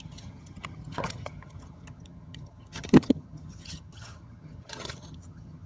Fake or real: fake